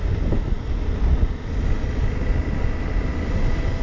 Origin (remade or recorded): recorded